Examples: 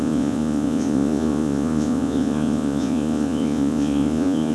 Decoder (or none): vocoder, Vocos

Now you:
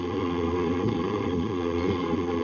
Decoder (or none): vocoder, Vocos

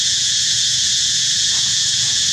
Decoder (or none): vocoder, Vocos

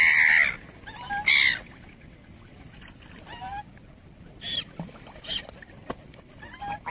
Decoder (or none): none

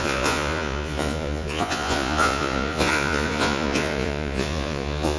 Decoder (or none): vocoder, Vocos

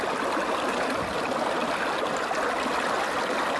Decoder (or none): none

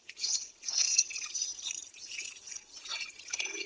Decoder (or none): vocoder, Vocos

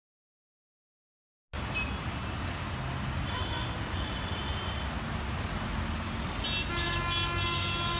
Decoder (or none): none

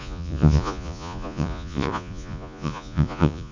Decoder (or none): vocoder, Vocos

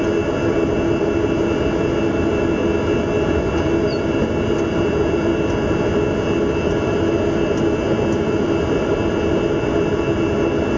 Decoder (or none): none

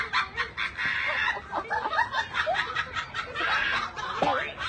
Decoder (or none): none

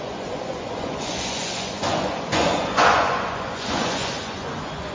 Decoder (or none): vocoder, Vocos